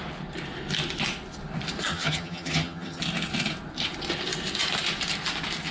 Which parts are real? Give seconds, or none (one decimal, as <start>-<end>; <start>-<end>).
0.0-1.9; 3.0-5.7